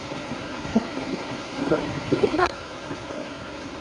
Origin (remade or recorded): remade